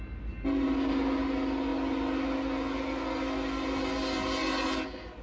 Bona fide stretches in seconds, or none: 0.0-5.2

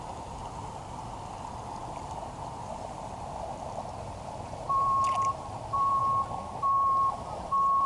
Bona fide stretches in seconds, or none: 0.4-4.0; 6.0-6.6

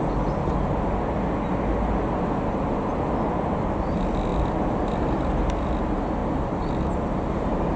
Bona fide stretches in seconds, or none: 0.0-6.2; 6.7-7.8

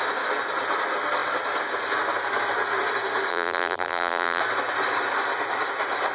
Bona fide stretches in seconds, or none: 0.0-3.3; 4.4-6.1

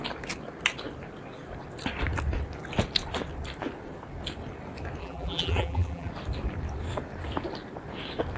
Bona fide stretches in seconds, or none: 0.0-5.0; 6.1-8.4